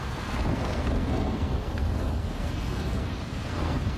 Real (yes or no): no